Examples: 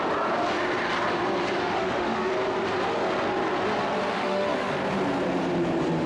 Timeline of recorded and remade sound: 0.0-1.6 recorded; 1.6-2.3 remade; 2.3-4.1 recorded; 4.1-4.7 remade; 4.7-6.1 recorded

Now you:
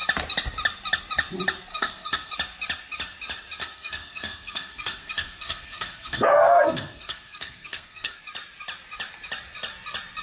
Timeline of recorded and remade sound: 0.0-1.7 recorded; 1.7-2.3 remade; 2.3-3.6 recorded; 3.6-8.2 remade; 8.2-10.2 recorded

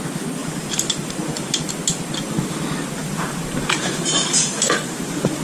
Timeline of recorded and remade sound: 0.0-0.4 recorded; 0.4-1.7 remade; 1.7-3.0 recorded; 3.0-5.4 remade

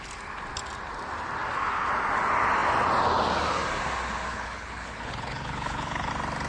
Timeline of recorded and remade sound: 0.0-4.3 recorded; 4.3-6.1 remade; 6.1-6.5 recorded

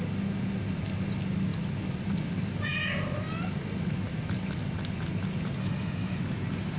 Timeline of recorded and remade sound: 0.0-5.6 recorded; 5.6-6.2 remade; 6.2-6.8 recorded

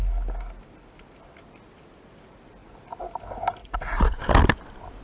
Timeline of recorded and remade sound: 0.0-3.6 recorded; 3.6-4.2 remade; 4.2-5.0 recorded

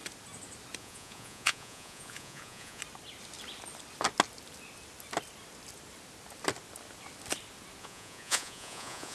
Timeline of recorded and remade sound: 0.0-0.8 recorded; 0.8-2.8 remade; 2.8-7.8 recorded; 7.8-9.1 remade

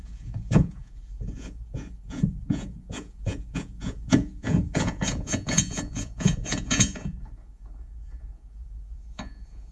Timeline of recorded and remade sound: 0.0-9.7 remade